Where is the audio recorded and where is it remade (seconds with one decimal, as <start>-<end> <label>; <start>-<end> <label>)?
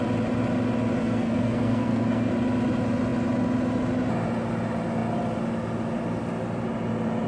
0.0-1.0 recorded; 1.0-2.3 remade; 2.3-7.3 recorded